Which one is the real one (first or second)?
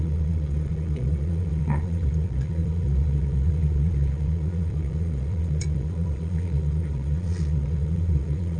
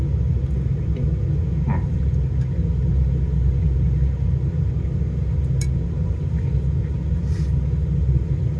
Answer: second